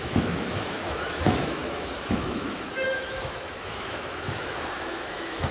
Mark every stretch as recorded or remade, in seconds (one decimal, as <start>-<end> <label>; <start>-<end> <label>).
0.0-5.5 remade